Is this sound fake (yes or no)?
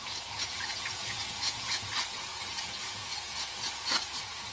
yes